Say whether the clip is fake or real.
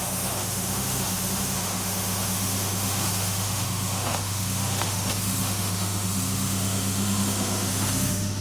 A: fake